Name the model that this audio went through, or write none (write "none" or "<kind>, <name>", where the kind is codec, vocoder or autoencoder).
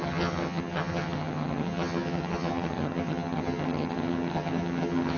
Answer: vocoder, HiFi-GAN